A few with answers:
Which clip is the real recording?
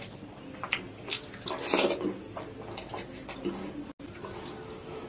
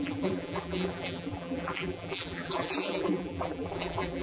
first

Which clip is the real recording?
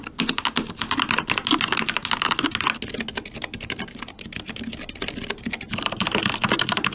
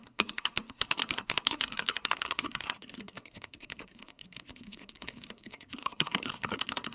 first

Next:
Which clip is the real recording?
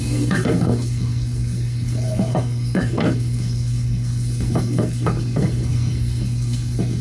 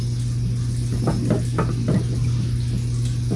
second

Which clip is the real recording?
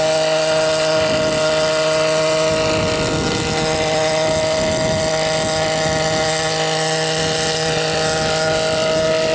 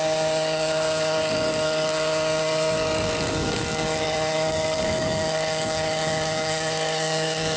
first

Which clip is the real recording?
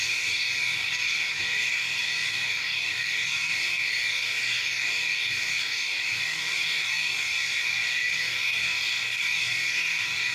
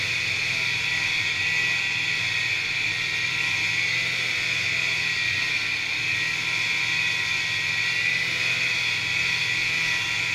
second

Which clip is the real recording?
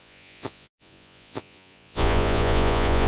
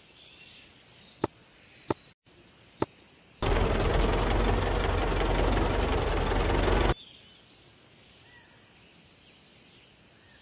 second